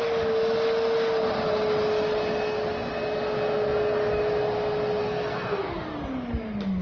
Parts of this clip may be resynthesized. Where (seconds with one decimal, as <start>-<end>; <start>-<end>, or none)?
5.0-5.7